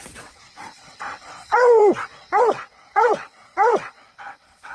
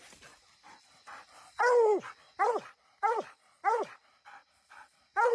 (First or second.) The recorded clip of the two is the second